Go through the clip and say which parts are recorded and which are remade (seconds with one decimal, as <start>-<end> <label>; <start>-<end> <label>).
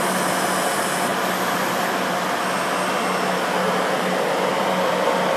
0.0-5.4 recorded